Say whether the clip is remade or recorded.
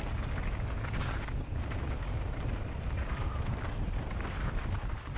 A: recorded